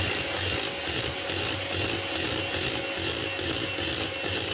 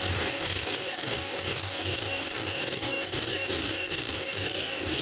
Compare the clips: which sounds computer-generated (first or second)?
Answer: second